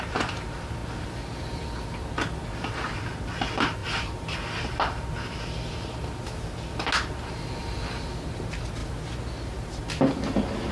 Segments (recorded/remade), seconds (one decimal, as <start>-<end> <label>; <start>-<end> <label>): 0.0-10.7 recorded